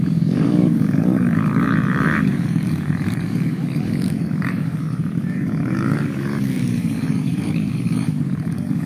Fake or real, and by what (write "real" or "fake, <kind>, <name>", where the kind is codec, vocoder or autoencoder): fake, codec, DAC